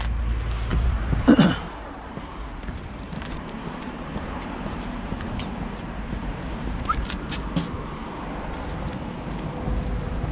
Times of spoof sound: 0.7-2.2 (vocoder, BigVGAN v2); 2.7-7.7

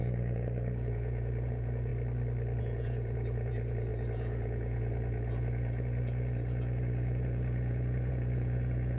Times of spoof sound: 0.0-1.9 (vocoder, Vocos); 2.6-9.0